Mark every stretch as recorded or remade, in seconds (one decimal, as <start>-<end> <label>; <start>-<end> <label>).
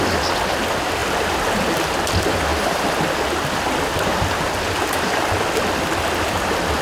0.0-6.8 recorded